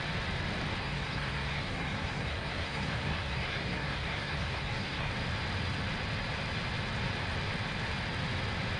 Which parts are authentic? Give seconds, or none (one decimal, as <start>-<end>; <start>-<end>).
0.0-0.8; 5.1-8.8